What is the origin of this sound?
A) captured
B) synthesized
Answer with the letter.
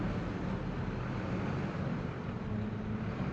A